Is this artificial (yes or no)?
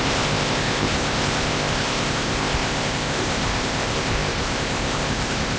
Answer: yes